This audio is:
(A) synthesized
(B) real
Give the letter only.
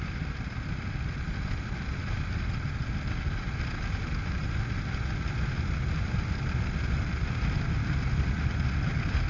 B